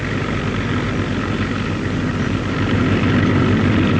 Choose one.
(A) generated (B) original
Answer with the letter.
B